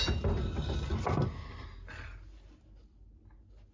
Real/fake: real